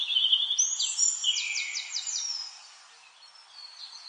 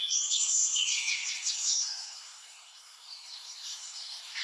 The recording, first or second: first